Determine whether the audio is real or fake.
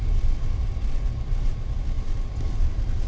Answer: fake